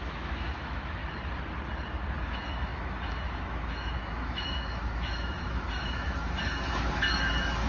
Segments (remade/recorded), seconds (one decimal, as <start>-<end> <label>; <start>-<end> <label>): 0.0-1.0 remade; 1.0-2.2 recorded; 2.2-7.7 remade